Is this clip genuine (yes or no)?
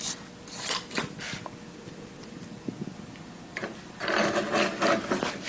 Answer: yes